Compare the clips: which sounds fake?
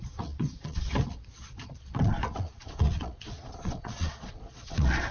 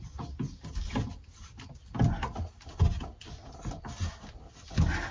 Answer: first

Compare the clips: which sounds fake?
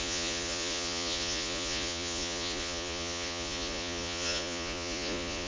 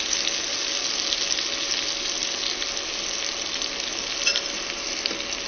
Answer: first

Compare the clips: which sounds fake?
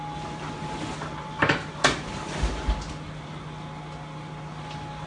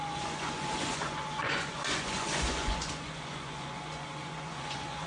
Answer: second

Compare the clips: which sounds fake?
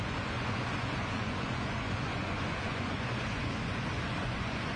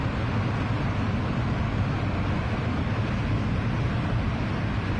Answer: first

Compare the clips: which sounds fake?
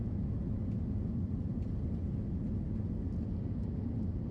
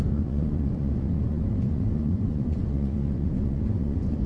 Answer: second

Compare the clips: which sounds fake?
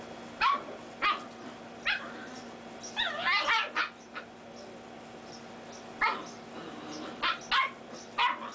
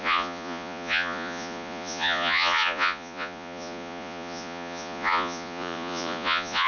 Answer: second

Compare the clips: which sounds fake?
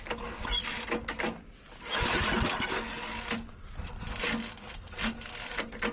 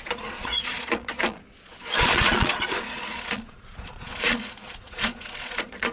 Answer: second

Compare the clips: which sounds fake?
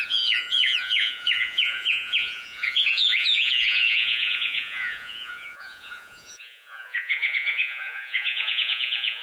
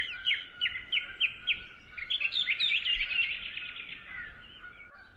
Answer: first